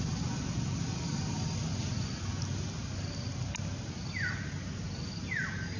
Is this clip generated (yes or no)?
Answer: no